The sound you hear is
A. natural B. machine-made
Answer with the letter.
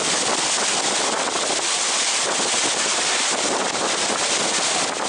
A